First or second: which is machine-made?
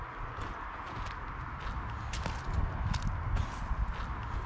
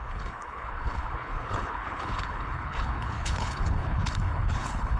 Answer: second